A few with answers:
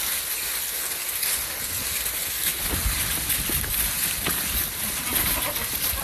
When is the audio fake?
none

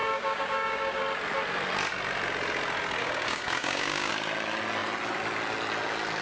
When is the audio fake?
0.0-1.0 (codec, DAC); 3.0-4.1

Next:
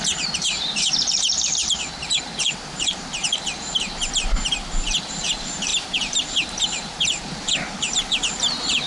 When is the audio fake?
0.0-1.6 (vocoder, BigVGAN v2); 2.2-8.9